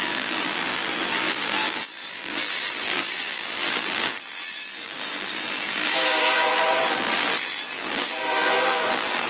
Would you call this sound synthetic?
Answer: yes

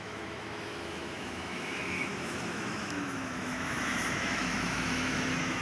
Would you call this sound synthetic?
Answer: yes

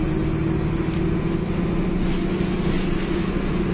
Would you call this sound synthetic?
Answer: no